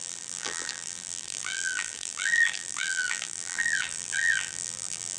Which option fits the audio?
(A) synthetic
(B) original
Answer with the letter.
A